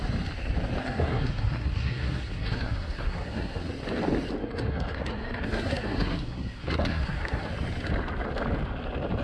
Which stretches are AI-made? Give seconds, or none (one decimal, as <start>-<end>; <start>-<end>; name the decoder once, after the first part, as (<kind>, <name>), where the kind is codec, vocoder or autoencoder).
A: 0.8-3.7 (codec, SNAC); 4.4-7.5